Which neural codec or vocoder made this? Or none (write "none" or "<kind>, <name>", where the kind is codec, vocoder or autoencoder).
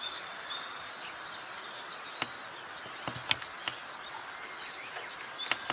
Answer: none